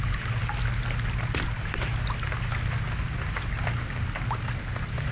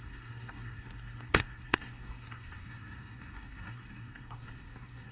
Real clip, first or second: first